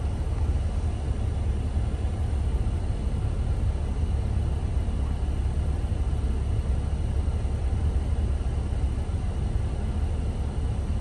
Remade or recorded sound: recorded